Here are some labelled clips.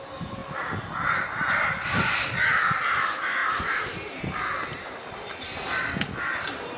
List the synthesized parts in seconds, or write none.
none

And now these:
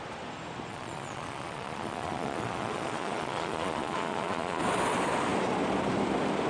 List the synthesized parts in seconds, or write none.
0.7-4.6 (vocoder, Vocos)

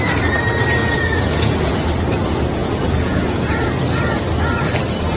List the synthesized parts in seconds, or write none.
0.8-1.7 (vocoder, Vocos); 2.6-3.8